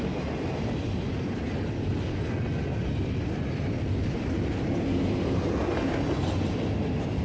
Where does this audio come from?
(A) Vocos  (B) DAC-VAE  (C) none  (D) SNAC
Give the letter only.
C